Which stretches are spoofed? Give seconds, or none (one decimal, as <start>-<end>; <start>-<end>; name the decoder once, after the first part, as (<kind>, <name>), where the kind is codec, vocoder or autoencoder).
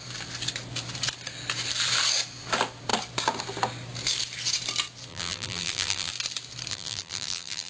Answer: 5.1-6.1 (vocoder, BigVGAN v2); 6.7-7.7